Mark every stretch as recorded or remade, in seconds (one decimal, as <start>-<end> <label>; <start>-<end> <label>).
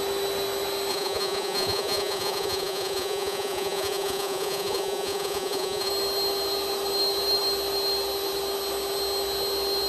0.0-0.9 recorded; 0.9-5.9 remade; 5.9-9.9 recorded